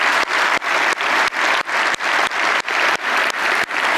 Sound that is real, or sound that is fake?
real